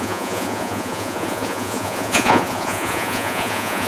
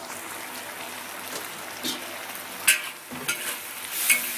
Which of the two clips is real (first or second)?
second